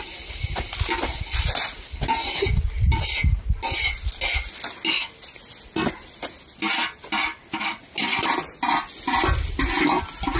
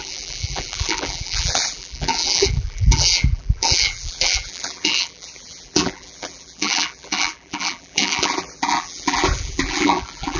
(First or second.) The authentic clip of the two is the first